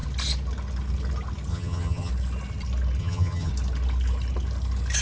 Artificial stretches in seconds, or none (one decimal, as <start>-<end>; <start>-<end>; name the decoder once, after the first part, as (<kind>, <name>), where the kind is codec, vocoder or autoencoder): 1.5-2.1 (vocoder, HiFi-GAN); 3.0-3.5